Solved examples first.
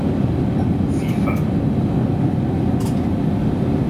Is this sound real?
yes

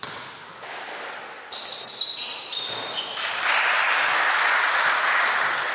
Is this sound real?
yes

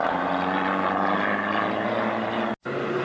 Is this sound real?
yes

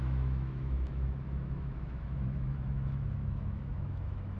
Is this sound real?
no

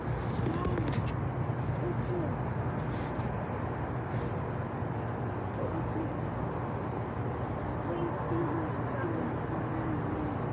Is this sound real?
yes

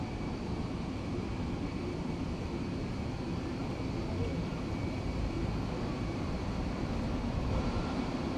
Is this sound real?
no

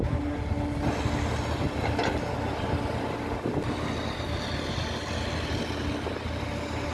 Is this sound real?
yes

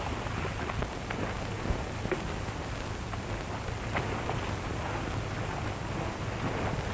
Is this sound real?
yes